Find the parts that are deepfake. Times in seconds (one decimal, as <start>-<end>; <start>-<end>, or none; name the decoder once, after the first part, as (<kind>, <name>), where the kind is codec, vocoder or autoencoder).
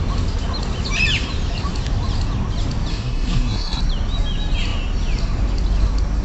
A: 2.9-3.8 (codec, SNAC)